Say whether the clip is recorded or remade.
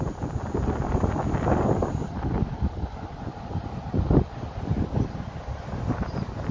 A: recorded